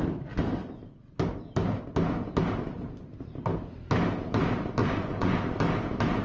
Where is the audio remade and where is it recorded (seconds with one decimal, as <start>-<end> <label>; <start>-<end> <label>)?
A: 0.0-4.8 recorded; 4.8-5.4 remade; 5.4-6.2 recorded

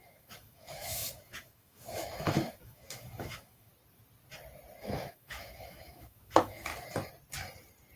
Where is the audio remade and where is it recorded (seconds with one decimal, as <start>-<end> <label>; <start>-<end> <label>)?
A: 0.0-3.7 remade; 3.7-4.8 recorded; 4.8-6.7 remade; 6.7-8.0 recorded

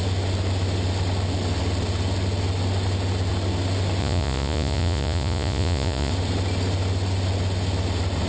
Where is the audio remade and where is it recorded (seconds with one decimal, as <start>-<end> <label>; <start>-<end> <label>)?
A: 0.0-4.0 recorded; 4.0-6.1 remade; 6.1-8.3 recorded

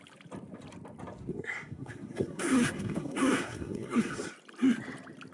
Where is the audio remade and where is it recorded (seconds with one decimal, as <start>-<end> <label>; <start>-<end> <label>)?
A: 0.0-1.3 recorded; 1.3-4.3 remade; 4.3-5.3 recorded